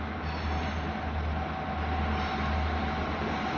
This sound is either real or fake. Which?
real